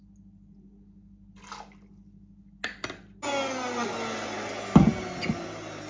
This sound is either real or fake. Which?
real